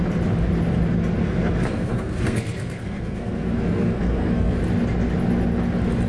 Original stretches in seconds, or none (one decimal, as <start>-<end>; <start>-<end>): 0.0-1.2; 4.6-6.1